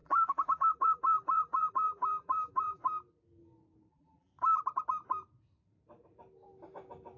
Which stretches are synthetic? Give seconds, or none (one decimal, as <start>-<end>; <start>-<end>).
0.0-2.8; 3.9-4.3